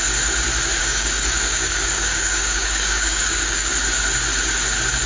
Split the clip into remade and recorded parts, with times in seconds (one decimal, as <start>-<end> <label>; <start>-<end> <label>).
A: 0.0-0.8 recorded; 0.8-3.7 remade; 3.7-5.1 recorded